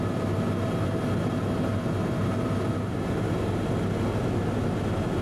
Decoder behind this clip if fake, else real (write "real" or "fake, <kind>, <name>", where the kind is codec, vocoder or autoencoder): real